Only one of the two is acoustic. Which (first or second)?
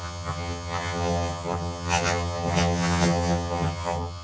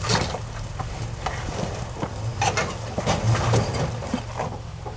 second